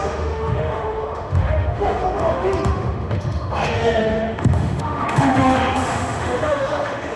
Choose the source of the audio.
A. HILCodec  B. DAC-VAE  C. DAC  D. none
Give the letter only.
B